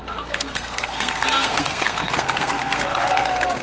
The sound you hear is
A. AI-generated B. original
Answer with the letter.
A